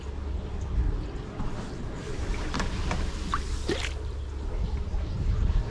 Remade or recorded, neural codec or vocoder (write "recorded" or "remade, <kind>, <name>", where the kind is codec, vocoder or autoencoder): recorded